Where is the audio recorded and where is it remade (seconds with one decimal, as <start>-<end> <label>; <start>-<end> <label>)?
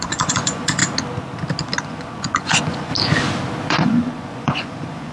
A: 0.0-0.8 remade; 0.8-1.8 recorded; 1.8-2.9 remade; 2.9-3.7 recorded; 3.7-5.1 remade